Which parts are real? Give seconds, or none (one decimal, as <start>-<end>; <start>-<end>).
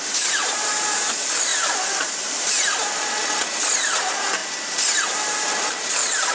1.5-4.0; 4.4-5.1